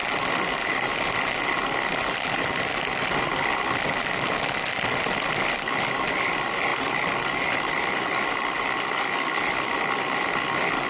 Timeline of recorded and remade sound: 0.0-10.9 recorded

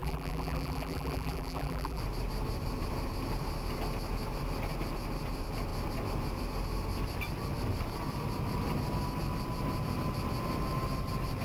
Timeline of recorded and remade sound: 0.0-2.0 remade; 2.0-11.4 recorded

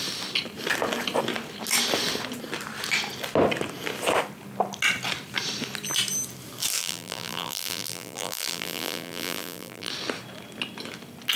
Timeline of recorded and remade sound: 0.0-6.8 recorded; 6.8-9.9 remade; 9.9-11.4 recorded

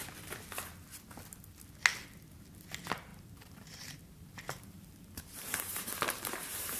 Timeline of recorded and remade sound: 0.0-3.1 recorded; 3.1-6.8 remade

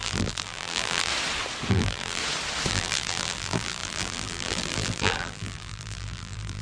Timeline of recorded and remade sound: 0.0-1.1 remade; 1.1-1.7 recorded; 1.7-2.2 remade; 2.2-2.7 recorded; 2.7-6.6 remade

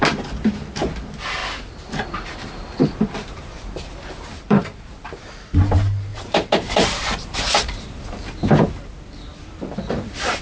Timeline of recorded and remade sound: 0.0-2.8 recorded; 2.8-5.3 remade; 5.3-6.1 recorded; 6.1-7.8 remade; 7.8-10.4 recorded

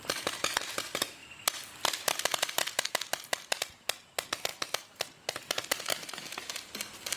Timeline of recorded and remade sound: 0.0-7.2 recorded